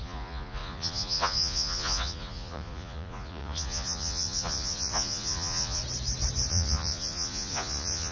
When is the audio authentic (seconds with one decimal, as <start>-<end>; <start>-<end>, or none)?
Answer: 5.8-6.5